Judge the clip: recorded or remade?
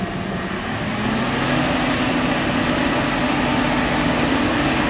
recorded